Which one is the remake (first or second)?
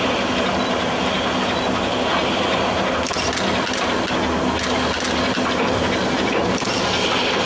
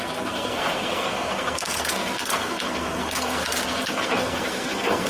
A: second